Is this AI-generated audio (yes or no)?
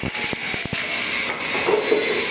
no